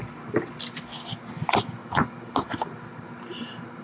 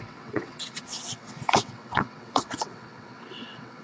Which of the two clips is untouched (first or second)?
first